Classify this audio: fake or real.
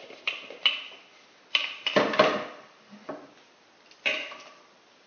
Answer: fake